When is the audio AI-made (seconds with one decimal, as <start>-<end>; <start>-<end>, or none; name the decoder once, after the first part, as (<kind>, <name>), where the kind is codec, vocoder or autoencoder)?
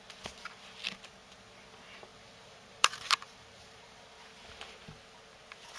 2.1-4.0 (vocoder, BigVGAN v2)